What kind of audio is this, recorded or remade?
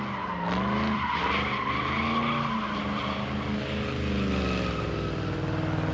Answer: recorded